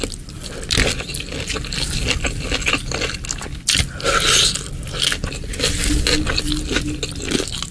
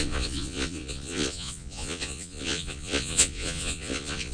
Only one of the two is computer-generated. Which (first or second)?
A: second